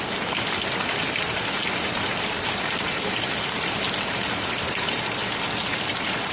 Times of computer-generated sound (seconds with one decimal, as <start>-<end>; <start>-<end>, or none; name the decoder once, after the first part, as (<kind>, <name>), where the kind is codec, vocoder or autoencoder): none